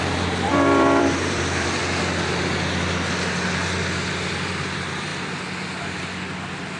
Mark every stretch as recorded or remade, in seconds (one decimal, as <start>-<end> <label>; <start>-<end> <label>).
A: 0.0-1.8 remade; 1.8-4.3 recorded; 4.3-5.1 remade; 5.1-6.8 recorded